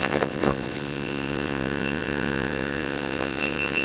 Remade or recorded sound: remade